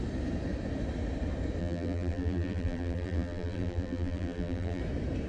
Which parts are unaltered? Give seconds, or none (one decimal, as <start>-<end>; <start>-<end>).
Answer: 0.0-1.6; 4.8-5.3